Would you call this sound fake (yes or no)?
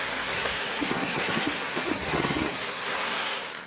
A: yes